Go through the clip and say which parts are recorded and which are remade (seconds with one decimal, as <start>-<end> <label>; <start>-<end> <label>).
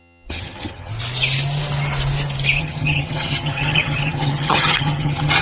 0.0-0.9 remade; 0.9-2.6 recorded; 2.6-5.4 remade